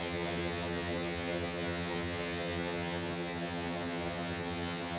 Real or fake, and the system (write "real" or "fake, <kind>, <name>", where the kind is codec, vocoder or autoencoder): fake, vocoder, HiFi-GAN